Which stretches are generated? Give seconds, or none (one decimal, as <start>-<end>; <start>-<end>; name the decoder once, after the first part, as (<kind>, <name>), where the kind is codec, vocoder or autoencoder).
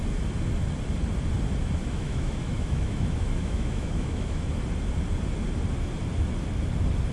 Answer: 1.8-4.4 (autoencoder, DAC-VAE)